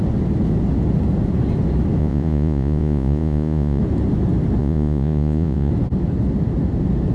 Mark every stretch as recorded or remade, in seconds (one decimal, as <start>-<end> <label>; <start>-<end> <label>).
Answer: 0.0-2.0 recorded; 2.0-3.8 remade; 3.8-4.6 recorded; 4.6-5.7 remade; 5.7-7.1 recorded